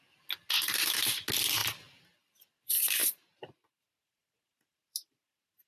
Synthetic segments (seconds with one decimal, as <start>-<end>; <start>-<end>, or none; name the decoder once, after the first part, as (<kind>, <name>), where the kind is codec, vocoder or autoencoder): 1.6-2.3 (vocoder, BigVGAN v2); 3.0-5.7